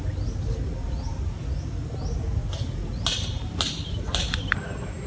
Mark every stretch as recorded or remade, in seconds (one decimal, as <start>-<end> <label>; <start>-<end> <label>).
0.0-5.1 recorded